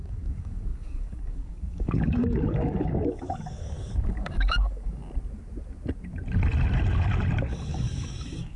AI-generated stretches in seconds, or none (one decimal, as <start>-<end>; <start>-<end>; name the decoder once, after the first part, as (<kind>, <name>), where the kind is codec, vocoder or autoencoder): 0.0-5.0 (codec, DAC); 7.4-8.6